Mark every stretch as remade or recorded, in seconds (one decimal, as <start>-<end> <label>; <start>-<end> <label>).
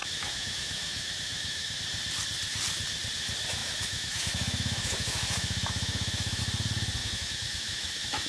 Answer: 0.0-1.8 remade; 1.8-3.6 recorded; 3.6-6.4 remade; 6.4-7.0 recorded; 7.0-8.3 remade